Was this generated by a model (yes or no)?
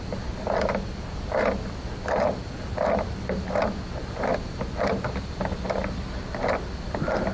no